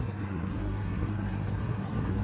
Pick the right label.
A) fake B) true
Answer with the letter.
A